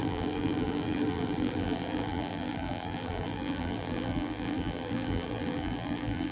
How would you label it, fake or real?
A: fake